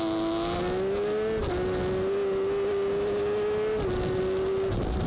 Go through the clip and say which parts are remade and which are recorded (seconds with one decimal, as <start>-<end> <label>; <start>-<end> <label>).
0.0-5.1 recorded